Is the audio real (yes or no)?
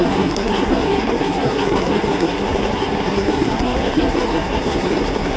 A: no